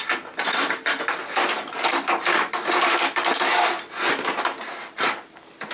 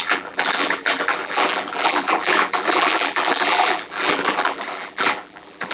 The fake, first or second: second